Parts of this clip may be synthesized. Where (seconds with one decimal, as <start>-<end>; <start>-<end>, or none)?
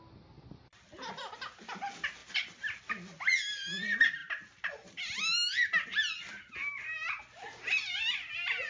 none